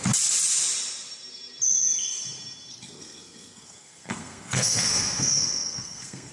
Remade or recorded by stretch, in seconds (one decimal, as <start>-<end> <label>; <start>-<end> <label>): 0.0-2.7 recorded; 2.7-6.3 remade